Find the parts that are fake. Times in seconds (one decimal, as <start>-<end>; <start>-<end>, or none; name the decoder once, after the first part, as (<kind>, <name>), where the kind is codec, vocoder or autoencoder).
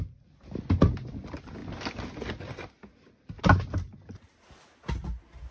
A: none